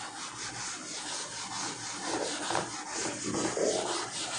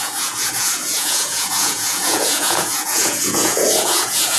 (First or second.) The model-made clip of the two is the second